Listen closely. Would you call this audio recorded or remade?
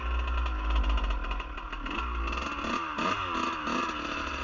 recorded